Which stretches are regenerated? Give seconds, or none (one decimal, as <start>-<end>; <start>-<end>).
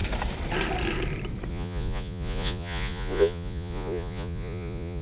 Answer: 1.5-5.0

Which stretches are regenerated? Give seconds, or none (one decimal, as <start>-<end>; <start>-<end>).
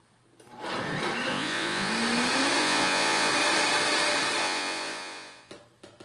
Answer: 1.3-1.9; 2.6-3.3; 4.4-5.5